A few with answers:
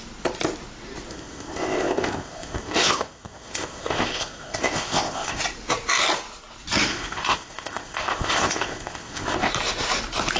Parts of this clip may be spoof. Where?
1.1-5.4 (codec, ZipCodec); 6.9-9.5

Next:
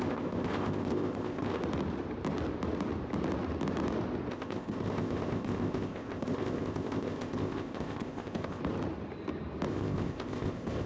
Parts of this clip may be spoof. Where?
0.0-1.6 (codec, ZipCodec); 4.3-8.6; 9.7-10.9

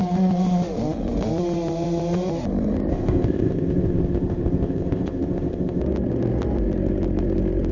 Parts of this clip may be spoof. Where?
2.9-5.8 (codec, ZipCodec)

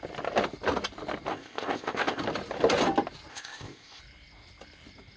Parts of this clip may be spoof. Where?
1.3-2.2 (codec, ZipCodec); 3.3-4.0

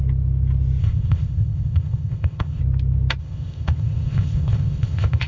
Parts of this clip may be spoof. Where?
0.8-2.6 (codec, ZipCodec); 3.2-5.3

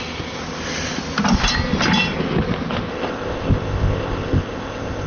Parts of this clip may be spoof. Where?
2.9-5.1 (codec, ZipCodec)